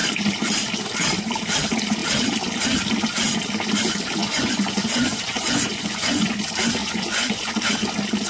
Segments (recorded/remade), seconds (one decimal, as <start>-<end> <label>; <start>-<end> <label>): 0.0-4.2 recorded; 4.2-6.3 remade; 6.3-6.8 recorded; 6.8-7.5 remade; 7.5-8.3 recorded